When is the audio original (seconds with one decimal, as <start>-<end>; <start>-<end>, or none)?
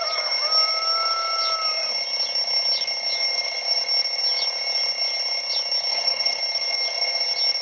0.0-5.9; 6.4-7.6